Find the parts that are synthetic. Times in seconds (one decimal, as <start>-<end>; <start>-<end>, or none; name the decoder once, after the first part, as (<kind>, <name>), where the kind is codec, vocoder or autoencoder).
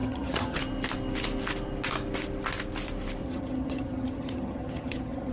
0.0-0.6 (vocoder, HiFi-GAN); 3.2-5.3